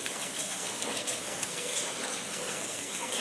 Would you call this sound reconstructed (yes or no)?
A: yes